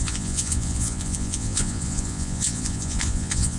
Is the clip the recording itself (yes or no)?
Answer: no